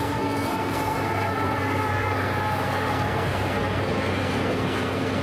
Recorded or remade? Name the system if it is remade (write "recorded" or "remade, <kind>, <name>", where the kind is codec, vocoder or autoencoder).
remade, codec, SNAC